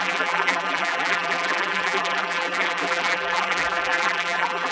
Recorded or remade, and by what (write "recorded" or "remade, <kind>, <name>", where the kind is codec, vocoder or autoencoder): remade, vocoder, BigVGAN v2